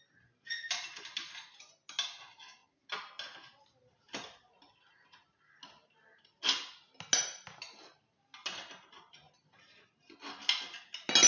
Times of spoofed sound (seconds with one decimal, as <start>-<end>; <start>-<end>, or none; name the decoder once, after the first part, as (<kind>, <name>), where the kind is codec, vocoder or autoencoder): none